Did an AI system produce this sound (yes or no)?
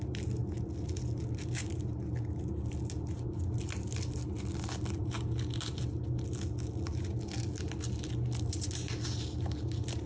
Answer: no